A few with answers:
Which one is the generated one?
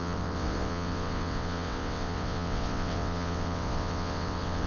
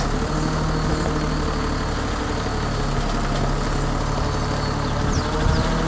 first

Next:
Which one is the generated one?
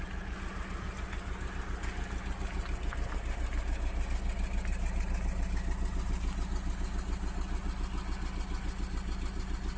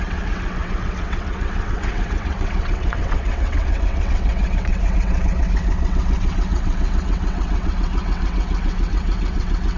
second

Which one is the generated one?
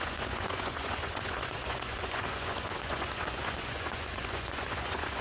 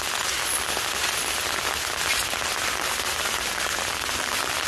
first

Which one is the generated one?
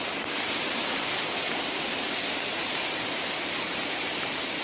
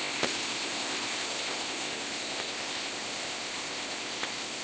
second